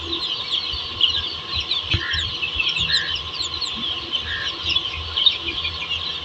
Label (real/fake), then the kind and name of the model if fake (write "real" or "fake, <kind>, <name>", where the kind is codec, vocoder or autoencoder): fake, vocoder, BigVGAN v2